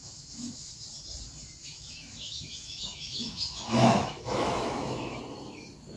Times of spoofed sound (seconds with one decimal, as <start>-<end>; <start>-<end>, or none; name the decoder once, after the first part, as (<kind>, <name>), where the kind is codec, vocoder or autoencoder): 0.0-0.7 (autoencoder, DAC-VAE); 1.6-5.2